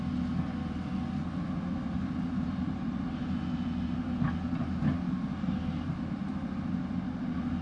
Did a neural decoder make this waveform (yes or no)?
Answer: no